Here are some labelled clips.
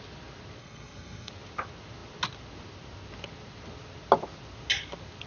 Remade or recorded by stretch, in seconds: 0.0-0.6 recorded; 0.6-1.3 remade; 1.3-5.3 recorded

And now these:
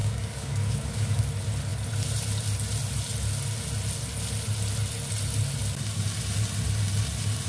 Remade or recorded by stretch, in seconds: 0.0-1.2 remade; 1.2-7.5 recorded

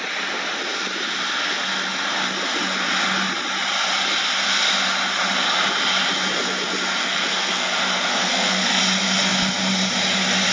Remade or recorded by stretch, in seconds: 0.0-7.0 recorded; 7.0-7.8 remade; 7.8-8.2 recorded; 8.2-8.8 remade; 8.8-10.5 recorded